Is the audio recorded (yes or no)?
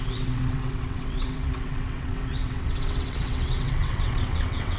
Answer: no